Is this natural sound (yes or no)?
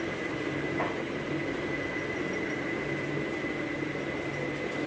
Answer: yes